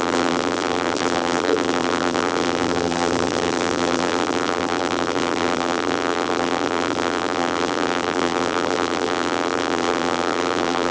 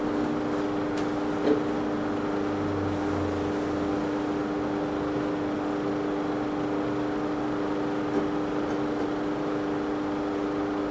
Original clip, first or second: second